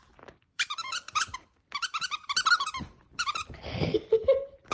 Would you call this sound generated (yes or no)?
yes